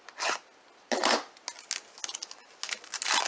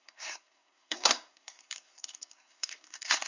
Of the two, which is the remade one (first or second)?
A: second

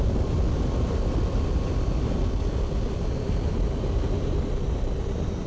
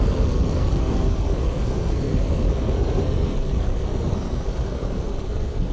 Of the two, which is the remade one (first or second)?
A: second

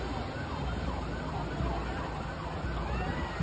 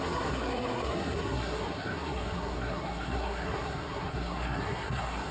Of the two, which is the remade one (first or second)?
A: second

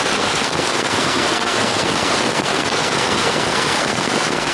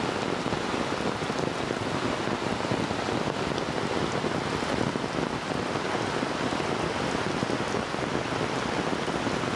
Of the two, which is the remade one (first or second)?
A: first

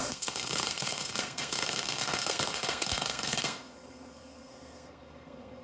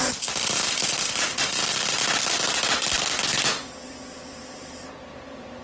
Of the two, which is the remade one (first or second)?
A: first